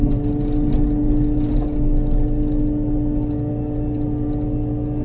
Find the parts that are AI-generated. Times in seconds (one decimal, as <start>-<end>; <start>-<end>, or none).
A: none